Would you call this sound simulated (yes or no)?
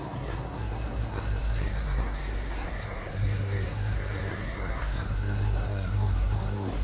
yes